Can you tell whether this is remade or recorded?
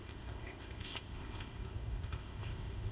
remade